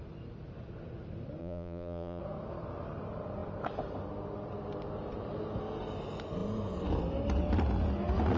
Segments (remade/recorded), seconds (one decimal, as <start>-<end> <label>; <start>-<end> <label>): 0.0-1.4 recorded; 1.4-2.2 remade; 2.2-8.4 recorded